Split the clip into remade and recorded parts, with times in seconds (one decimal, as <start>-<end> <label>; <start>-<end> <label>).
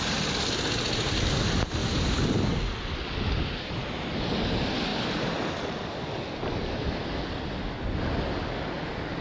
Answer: 0.0-9.2 recorded